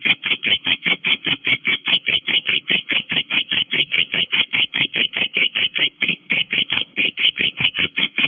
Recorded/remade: remade